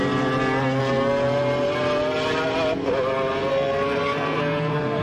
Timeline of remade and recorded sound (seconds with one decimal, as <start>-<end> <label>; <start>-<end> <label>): 0.0-3.5 recorded; 3.5-5.0 remade

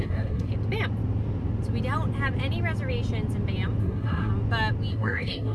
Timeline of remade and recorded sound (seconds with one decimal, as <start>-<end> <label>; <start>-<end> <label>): 0.0-0.5 remade; 0.5-3.8 recorded; 3.8-4.3 remade; 4.3-4.9 recorded; 4.9-5.5 remade

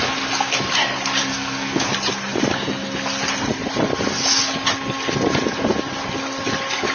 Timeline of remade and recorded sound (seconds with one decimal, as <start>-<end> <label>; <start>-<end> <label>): 0.0-1.3 recorded; 1.3-1.9 remade; 1.9-6.9 recorded

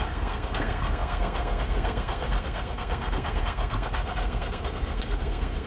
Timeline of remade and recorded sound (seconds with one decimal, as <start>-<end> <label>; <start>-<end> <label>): 0.0-5.7 remade

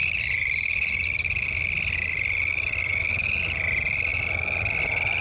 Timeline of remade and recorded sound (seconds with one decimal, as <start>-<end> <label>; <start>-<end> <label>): 0.0-5.2 recorded